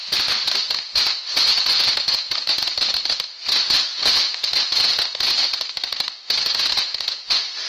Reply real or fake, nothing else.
real